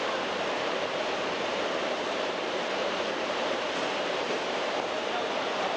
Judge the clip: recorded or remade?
remade